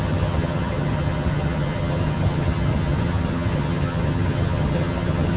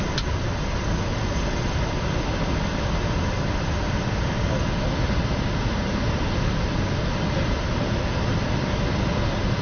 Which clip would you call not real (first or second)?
first